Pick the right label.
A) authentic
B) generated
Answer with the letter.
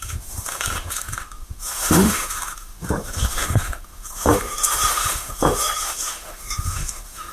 B